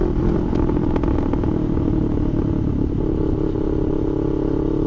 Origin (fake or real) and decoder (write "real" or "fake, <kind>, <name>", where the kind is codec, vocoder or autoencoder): real